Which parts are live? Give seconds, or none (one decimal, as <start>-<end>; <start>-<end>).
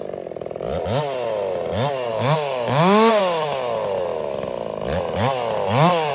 0.0-2.1; 3.2-6.1